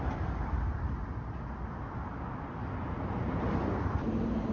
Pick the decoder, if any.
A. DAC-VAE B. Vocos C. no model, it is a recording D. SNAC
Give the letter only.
C